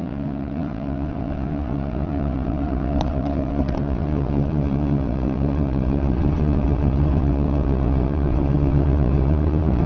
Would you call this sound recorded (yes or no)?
no